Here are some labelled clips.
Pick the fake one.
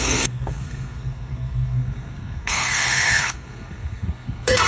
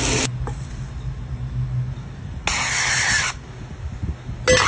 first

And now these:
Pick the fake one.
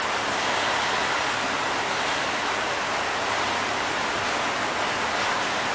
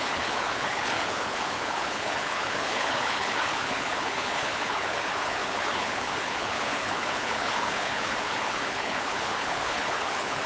second